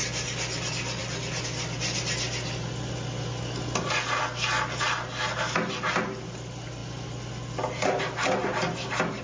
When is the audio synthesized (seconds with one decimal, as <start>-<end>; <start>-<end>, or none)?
none